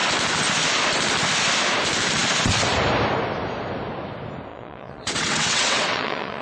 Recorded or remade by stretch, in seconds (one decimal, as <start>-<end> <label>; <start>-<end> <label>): 0.0-4.5 recorded; 4.5-6.4 remade